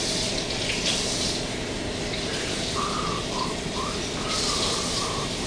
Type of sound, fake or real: fake